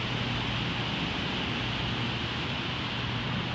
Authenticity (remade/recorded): recorded